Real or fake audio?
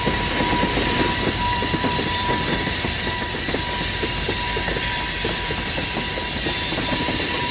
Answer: fake